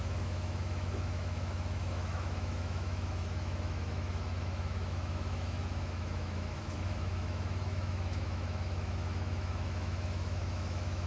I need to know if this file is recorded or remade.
remade